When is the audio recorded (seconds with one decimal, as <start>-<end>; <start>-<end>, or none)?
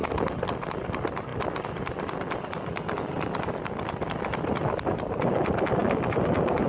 0.0-6.7